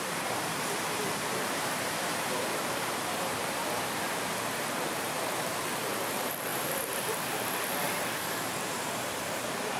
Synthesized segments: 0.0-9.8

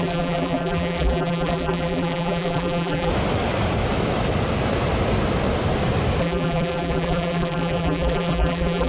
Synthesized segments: 0.0-3.1; 6.2-8.9

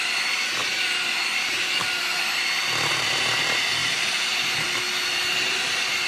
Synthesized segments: 0.6-2.0; 3.8-4.7

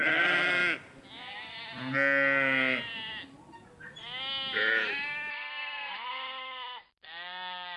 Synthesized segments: 0.0-0.6; 5.3-7.8

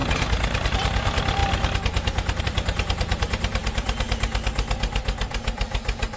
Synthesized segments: 0.7-1.4; 2.4-6.2

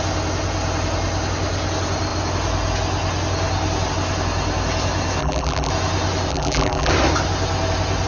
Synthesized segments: 5.2-5.7; 6.3-6.9

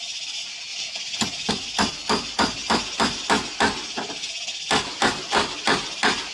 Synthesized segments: none